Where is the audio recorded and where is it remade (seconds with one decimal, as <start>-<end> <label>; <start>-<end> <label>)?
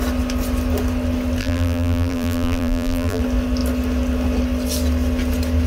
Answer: 0.0-1.4 recorded; 1.4-3.2 remade; 3.2-5.7 recorded